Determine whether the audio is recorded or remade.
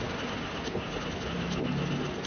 recorded